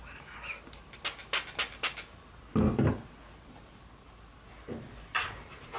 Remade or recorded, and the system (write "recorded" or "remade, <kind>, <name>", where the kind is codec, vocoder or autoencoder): recorded